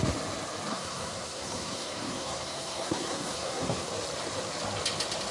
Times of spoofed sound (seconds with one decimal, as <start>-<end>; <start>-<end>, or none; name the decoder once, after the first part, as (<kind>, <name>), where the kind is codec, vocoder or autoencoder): 0.7-3.9 (codec, SNAC)